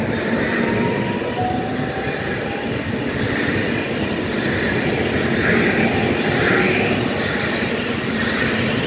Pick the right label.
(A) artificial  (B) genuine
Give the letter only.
B